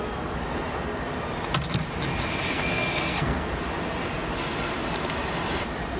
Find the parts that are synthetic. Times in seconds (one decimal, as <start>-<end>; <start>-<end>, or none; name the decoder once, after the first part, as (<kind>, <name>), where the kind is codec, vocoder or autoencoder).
2.5-3.5 (codec, SNAC)